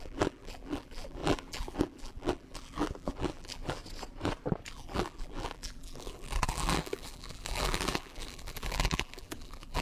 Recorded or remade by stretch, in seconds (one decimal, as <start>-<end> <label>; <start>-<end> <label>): 0.0-3.8 remade; 3.8-4.7 recorded; 4.7-9.8 remade